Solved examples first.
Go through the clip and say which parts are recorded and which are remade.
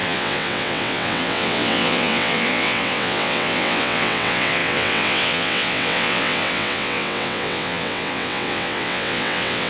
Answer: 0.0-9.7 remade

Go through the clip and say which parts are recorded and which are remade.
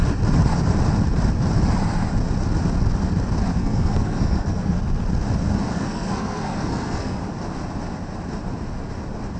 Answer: 0.0-3.5 recorded; 3.5-4.8 remade; 4.8-5.7 recorded; 5.7-7.2 remade; 7.2-9.4 recorded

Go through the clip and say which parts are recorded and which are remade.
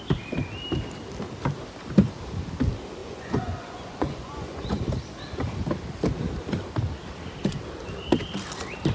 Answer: 0.0-3.0 recorded; 3.0-4.8 remade; 4.8-8.9 recorded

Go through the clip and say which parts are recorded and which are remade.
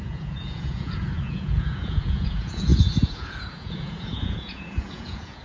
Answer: 0.0-5.4 remade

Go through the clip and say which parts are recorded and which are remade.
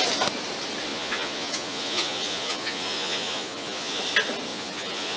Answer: 0.0-0.9 recorded; 0.9-4.0 remade; 4.0-4.5 recorded; 4.5-5.2 remade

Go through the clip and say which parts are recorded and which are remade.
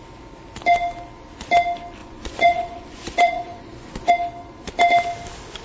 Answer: 0.0-2.0 recorded; 2.0-4.1 remade; 4.1-5.6 recorded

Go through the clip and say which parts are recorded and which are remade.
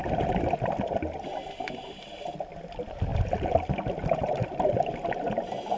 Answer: 0.0-0.7 remade; 0.7-3.1 recorded; 3.1-4.6 remade; 4.6-5.8 recorded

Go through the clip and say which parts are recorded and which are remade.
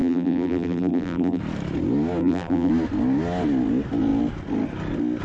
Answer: 0.0-1.4 remade; 1.4-2.2 recorded; 2.2-2.7 remade; 2.7-5.2 recorded